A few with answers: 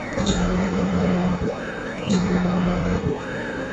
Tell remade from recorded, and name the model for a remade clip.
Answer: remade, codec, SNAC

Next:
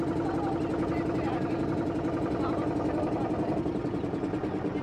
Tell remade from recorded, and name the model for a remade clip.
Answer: recorded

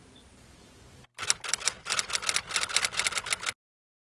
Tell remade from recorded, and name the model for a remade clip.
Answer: recorded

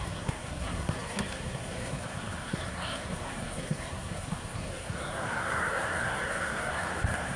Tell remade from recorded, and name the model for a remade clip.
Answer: remade, codec, SNAC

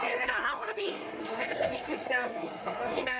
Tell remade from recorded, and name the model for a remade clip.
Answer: remade, codec, SNAC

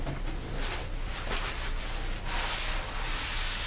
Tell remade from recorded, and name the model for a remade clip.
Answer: recorded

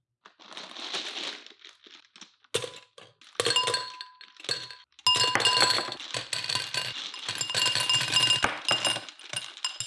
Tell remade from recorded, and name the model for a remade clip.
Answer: recorded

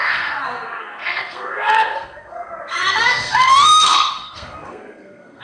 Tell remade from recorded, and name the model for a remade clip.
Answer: remade, codec, SNAC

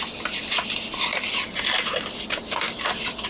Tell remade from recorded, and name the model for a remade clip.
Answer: recorded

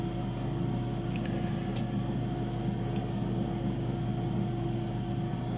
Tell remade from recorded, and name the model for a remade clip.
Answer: recorded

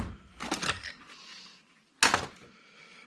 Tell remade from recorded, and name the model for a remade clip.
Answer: recorded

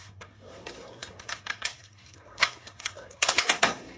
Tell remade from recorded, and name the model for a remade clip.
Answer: remade, codec, SNAC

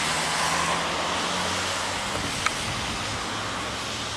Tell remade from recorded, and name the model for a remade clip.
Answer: recorded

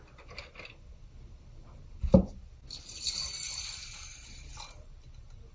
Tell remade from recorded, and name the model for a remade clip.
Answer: recorded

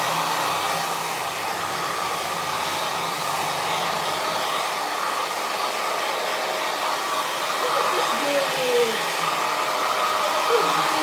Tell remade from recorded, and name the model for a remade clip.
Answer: recorded